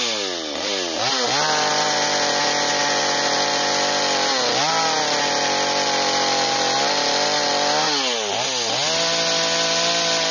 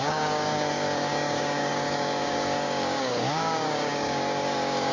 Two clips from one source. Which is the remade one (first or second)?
second